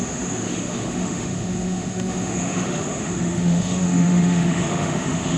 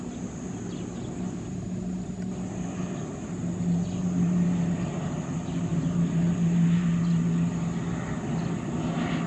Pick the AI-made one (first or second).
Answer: first